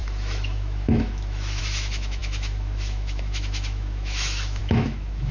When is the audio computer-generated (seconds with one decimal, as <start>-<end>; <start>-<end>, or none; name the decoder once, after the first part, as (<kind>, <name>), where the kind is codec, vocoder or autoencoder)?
0.0-5.3 (autoencoder, DAC-VAE)